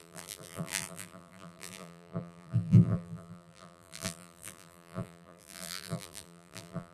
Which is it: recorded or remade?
remade